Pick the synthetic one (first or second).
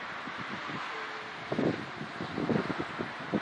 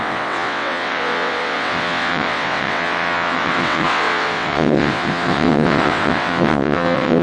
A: second